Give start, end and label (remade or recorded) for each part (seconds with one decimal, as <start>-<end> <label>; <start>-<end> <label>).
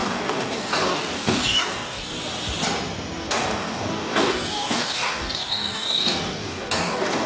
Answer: 0.0-2.0 remade; 2.0-3.2 recorded; 3.2-7.3 remade